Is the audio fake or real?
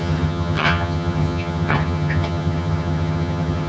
fake